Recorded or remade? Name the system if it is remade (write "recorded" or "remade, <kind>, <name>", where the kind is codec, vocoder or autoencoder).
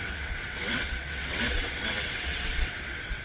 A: remade, vocoder, WaveNeXt